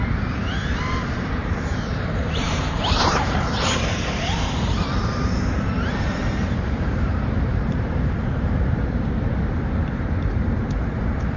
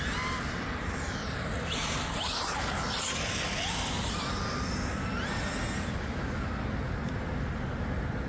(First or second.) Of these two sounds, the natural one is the second